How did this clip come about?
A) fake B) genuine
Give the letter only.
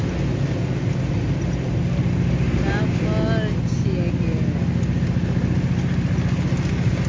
B